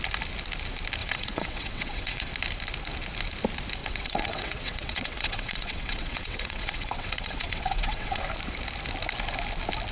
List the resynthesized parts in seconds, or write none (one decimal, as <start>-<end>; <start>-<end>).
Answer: 1.0-2.3; 3.8-8.2